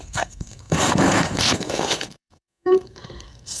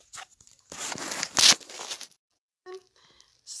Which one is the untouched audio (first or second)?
second